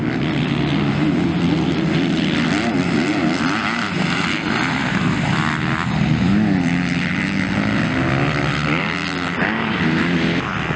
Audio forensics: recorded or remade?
recorded